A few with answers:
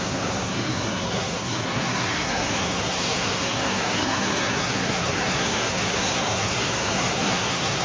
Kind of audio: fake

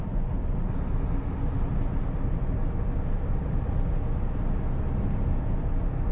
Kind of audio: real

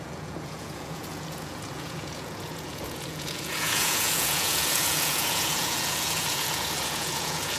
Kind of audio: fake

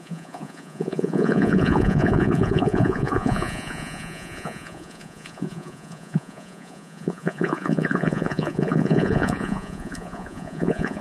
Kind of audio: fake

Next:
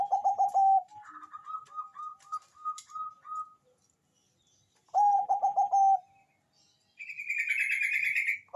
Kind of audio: real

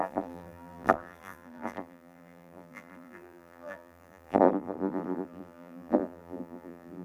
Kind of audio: fake